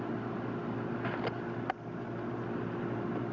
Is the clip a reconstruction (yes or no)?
no